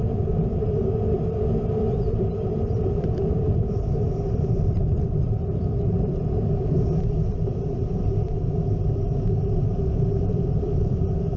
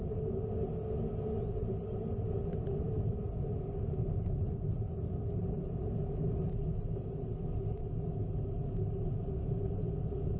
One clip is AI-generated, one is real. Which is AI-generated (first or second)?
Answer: first